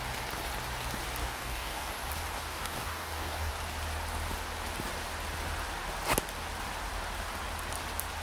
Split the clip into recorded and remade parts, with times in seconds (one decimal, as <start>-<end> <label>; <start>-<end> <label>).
0.0-1.2 recorded; 1.2-1.9 remade; 1.9-2.5 recorded; 2.5-3.5 remade; 3.5-8.2 recorded